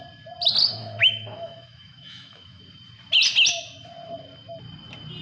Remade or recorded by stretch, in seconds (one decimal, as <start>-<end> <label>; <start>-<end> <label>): 0.0-0.8 recorded; 0.8-2.6 remade; 2.6-5.2 recorded